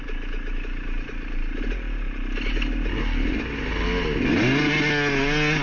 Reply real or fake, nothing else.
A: real